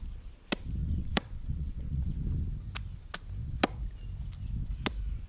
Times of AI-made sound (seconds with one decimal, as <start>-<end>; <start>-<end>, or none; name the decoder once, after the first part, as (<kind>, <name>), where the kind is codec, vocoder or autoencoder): 0.8-2.0 (vocoder, WaveNeXt)

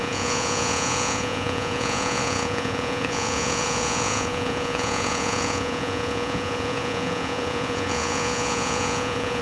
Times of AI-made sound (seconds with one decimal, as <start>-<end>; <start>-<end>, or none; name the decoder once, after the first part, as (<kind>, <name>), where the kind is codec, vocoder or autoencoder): 0.0-9.4 (vocoder, Vocos)

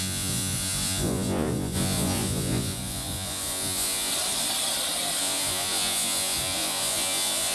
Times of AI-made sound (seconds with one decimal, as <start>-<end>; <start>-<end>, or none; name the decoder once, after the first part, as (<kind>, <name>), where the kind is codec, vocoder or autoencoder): 0.0-4.1 (vocoder, Vocos); 5.2-7.5